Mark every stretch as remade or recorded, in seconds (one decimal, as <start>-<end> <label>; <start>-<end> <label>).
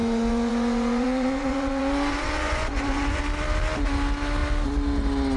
0.0-3.2 remade; 3.2-5.4 recorded